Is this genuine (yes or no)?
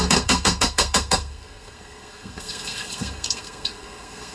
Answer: no